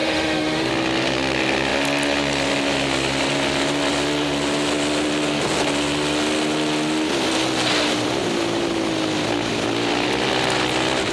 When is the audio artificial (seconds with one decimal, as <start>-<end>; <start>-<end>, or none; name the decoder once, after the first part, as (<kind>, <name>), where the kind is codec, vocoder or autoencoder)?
0.0-0.7 (autoencoder, DAC-VAE)